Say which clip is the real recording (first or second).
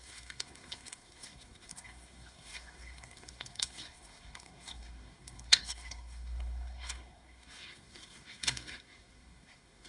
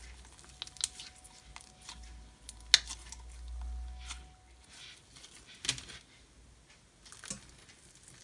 second